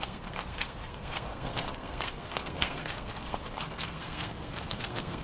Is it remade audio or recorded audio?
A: remade